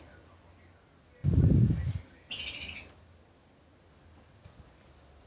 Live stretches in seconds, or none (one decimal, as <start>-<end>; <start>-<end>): 0.0-5.3